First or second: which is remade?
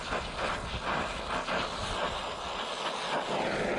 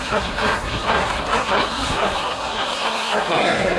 second